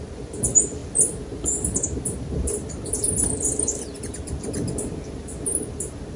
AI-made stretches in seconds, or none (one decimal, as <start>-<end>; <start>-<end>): 0.0-6.2